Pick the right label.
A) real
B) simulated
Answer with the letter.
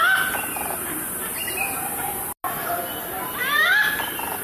A